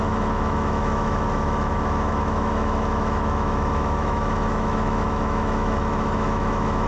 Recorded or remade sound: remade